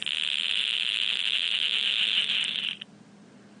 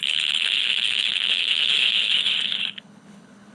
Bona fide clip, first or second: first